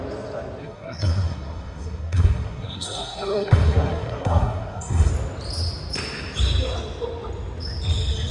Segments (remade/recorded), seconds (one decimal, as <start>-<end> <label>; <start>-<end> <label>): 0.0-0.6 recorded; 0.6-5.1 remade; 5.1-8.3 recorded